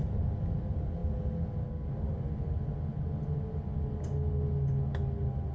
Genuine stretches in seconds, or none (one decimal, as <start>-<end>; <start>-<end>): 0.0-5.5